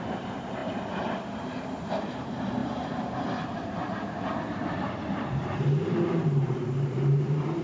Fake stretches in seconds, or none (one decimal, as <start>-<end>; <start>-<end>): 0.0-7.6